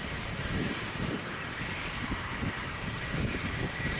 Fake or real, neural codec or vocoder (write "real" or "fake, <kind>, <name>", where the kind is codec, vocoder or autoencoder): fake, vocoder, BigVGAN v2